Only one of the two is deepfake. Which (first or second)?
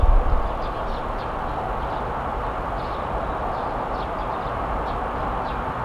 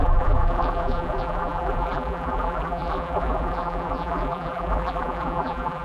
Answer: second